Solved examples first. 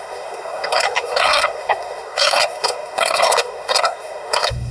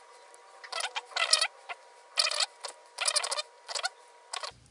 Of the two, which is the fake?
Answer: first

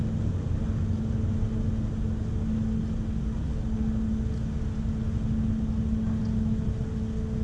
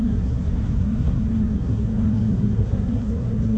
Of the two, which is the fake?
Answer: second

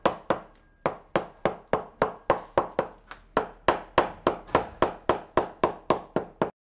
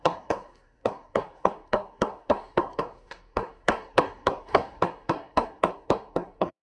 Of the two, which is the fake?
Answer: second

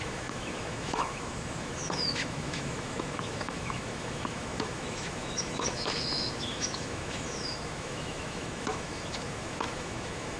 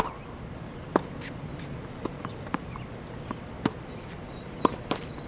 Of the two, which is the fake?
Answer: first